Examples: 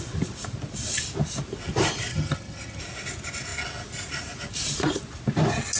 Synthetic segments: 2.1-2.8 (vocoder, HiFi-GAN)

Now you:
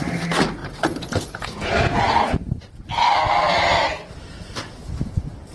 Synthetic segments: 0.6-2.3 (vocoder, Vocos)

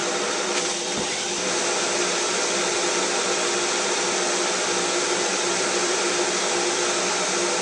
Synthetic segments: 0.0-1.5 (vocoder, BigVGAN v2); 5.3-6.1